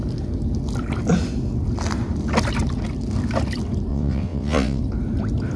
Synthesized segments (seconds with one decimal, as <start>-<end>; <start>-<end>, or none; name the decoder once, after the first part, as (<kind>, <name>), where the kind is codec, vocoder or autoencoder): 3.9-4.8 (vocoder, WaveNeXt)